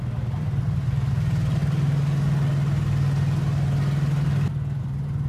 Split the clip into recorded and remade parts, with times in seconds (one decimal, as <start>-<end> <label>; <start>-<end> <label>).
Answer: 0.0-1.6 remade; 1.6-4.8 recorded; 4.8-5.3 remade